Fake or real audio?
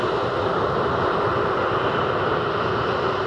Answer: real